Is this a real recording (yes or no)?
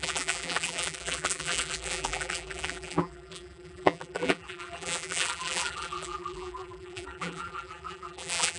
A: no